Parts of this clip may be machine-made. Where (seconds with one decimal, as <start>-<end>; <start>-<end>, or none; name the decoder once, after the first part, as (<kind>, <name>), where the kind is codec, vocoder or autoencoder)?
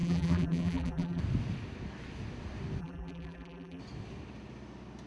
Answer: 0.0-1.2 (vocoder, BigVGAN v2); 2.8-3.8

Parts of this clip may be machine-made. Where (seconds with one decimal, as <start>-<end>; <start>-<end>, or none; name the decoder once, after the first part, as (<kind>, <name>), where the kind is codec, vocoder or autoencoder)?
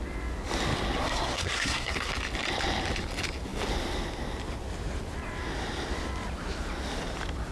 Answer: 1.0-2.1 (codec, SNAC)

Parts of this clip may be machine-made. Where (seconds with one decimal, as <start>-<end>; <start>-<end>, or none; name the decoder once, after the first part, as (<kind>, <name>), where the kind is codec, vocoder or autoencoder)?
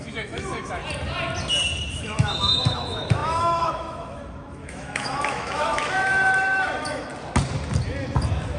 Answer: 0.0-0.8 (autoencoder, DAC-VAE); 1.9-7.1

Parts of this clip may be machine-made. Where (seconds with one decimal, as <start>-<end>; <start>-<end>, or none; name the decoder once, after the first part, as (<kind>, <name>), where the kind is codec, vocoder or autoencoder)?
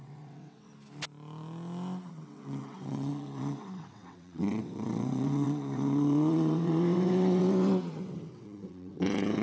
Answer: 0.0-0.7 (vocoder, WaveNeXt); 2.1-9.4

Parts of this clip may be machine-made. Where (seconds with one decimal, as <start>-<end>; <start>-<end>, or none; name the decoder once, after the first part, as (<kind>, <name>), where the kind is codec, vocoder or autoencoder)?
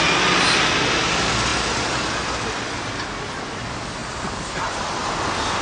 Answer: none